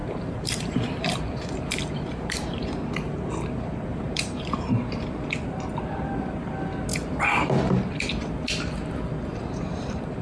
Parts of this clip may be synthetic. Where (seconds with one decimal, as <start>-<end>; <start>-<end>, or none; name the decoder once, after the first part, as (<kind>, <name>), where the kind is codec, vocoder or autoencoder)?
0.0-4.7 (vocoder, BigVGAN v2); 9.3-10.2